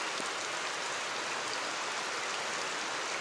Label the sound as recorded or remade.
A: recorded